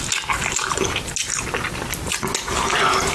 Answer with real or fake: real